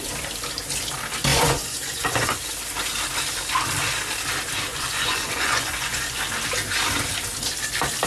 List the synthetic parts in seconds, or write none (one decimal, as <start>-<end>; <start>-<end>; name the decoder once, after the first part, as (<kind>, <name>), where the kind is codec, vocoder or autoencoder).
1.3-2.4 (vocoder, Vocos); 4.7-6.2